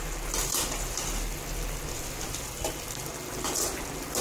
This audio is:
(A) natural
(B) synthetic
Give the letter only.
A